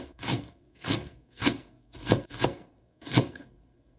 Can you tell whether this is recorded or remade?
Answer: remade